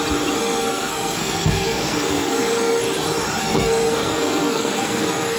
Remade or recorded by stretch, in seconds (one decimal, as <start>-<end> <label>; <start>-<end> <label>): 0.0-0.4 recorded; 0.4-2.8 remade; 2.8-3.4 recorded; 3.4-5.4 remade